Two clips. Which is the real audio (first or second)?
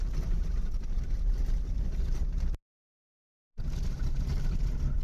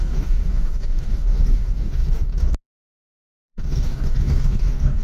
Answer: first